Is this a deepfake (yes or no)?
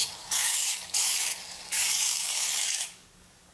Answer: yes